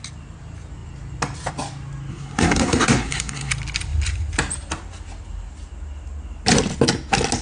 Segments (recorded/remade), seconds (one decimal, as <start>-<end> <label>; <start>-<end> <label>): 0.0-2.1 recorded; 2.1-3.5 remade; 3.5-7.4 recorded